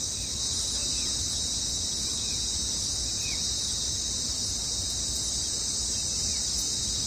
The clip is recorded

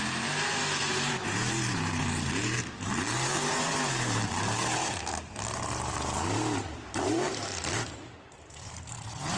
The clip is remade